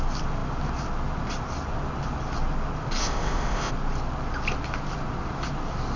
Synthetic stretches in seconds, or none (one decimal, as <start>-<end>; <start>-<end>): 3.0-3.7